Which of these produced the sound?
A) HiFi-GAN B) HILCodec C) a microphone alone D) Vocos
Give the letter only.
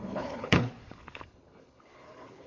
B